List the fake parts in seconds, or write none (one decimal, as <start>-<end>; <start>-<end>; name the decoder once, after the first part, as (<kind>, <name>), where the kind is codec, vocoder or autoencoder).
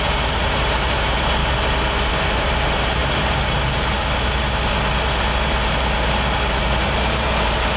0.0-1.4 (vocoder, BigVGAN v2); 2.1-7.8